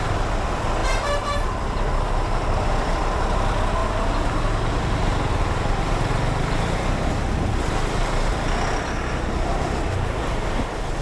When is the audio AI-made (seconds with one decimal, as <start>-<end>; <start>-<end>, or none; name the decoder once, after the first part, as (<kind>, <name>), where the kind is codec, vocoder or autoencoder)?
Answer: none